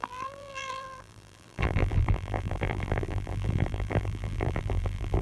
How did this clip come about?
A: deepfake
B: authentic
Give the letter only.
A